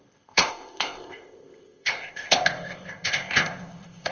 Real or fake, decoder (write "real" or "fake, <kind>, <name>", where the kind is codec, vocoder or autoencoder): fake, codec, ZipCodec